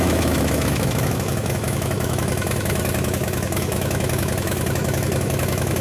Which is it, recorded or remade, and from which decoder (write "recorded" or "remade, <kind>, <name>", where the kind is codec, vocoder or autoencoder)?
remade, autoencoder, DAC-VAE